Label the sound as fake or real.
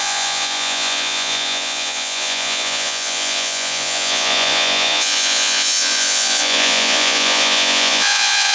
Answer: fake